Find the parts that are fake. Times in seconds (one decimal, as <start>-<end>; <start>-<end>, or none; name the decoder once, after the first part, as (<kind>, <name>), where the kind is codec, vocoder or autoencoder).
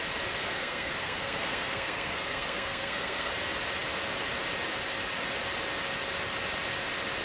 0.4-3.3 (codec, SNAC)